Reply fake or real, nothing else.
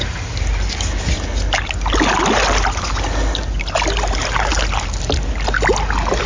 real